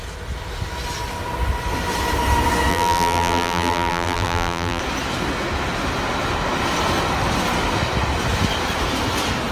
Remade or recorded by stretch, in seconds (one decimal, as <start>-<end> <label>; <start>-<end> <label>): 0.0-2.7 recorded; 2.7-4.8 remade; 4.8-9.5 recorded